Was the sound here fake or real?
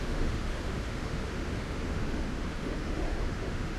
fake